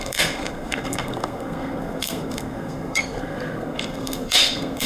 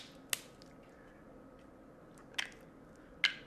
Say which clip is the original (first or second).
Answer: second